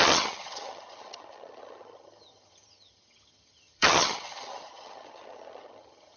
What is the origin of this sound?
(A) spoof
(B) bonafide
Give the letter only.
A